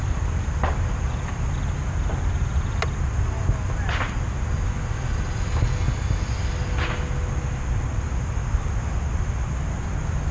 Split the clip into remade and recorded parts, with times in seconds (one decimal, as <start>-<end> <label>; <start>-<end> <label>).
0.0-10.3 recorded